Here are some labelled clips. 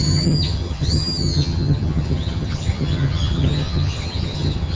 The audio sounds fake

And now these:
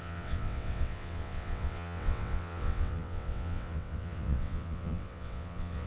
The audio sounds fake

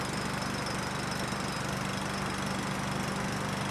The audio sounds real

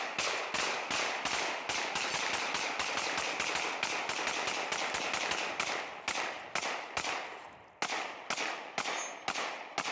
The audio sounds real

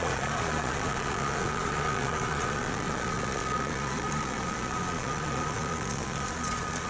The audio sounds fake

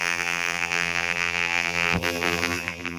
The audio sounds fake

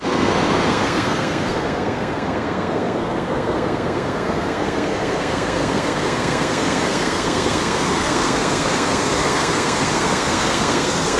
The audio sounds fake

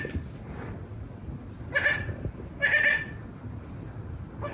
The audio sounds real